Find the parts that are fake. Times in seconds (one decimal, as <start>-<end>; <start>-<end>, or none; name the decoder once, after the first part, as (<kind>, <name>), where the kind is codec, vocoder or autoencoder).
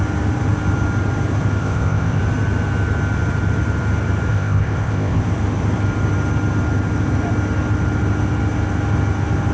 1.6-2.2 (codec, ZipCodec); 4.3-5.2